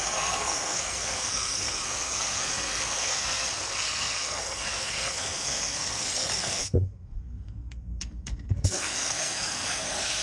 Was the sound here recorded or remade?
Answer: remade